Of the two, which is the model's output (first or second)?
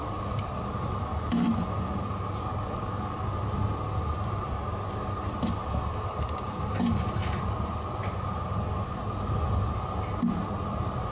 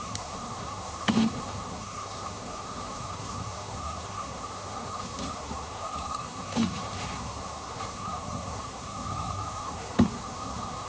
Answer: second